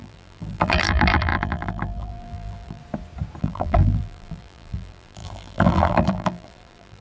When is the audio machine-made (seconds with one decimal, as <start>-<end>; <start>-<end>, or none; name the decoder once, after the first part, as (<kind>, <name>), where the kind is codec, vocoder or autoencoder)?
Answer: 0.0-2.8 (vocoder, BigVGAN v2); 3.4-7.0

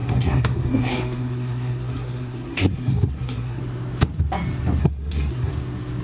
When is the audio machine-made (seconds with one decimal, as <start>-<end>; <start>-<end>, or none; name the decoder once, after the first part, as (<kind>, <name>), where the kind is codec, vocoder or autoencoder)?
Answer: 0.0-3.6 (codec, SNAC); 4.8-5.5

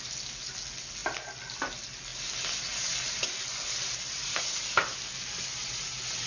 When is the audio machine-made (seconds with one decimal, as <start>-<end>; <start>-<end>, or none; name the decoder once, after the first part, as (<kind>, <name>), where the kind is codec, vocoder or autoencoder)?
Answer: none

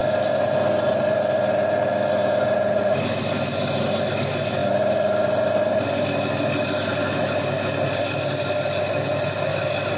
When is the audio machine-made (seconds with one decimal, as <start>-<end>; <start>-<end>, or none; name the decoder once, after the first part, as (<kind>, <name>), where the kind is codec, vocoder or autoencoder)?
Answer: none